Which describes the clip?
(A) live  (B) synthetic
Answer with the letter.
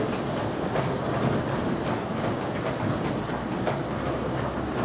A